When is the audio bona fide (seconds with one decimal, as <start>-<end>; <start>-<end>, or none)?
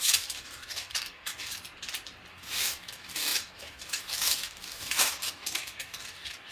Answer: 1.5-2.3